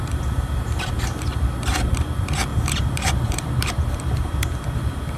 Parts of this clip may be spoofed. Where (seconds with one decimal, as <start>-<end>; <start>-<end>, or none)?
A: 0.0-1.3; 1.9-5.2